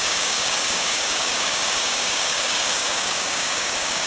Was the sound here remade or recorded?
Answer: remade